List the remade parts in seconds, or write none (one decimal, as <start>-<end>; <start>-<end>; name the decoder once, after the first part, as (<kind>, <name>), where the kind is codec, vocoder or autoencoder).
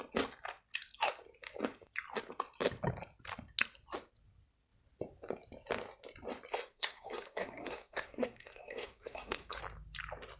6.5-9.6 (codec, SNAC)